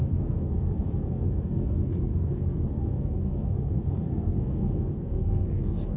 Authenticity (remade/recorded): remade